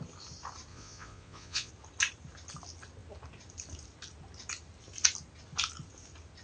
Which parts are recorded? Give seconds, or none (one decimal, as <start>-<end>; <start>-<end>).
0.0-0.7; 1.7-6.4